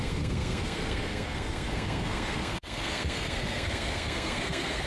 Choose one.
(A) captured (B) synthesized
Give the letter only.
B